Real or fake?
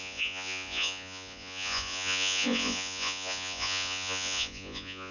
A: fake